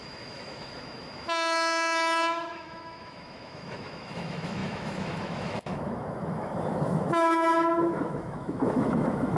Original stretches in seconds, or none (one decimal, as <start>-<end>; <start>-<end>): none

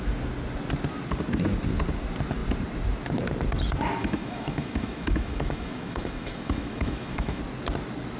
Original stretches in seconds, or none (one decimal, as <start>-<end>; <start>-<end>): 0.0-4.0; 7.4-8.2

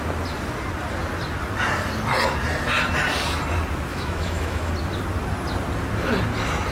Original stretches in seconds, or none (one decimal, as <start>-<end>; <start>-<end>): 0.0-3.9; 4.7-6.7

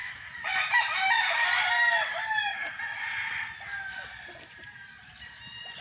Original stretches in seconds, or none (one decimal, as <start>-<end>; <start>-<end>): 0.0-5.8

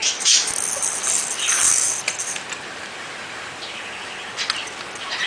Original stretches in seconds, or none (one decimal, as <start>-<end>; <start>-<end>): 0.5-5.3

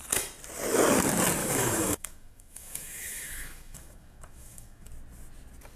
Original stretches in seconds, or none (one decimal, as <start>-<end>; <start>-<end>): 0.0-1.4; 4.9-5.8